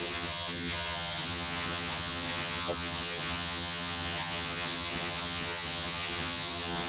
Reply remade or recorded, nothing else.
remade